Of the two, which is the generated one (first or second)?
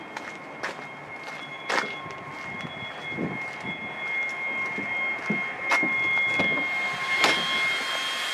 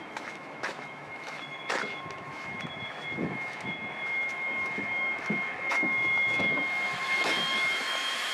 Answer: second